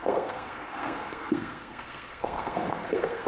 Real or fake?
fake